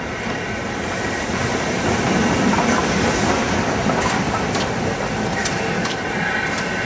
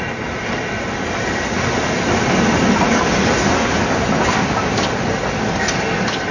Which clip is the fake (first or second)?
first